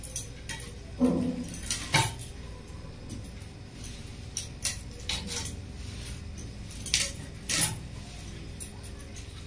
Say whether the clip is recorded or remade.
recorded